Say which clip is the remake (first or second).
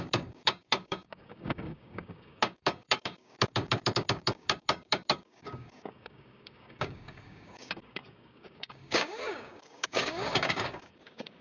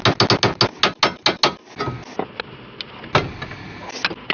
first